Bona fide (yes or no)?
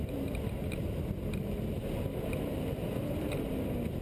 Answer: yes